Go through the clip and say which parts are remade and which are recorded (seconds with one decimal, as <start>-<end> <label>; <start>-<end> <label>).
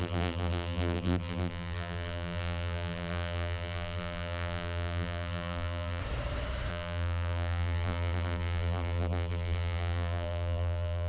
0.0-6.0 remade; 6.0-6.7 recorded; 6.7-11.1 remade